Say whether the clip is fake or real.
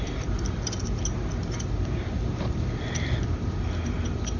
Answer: fake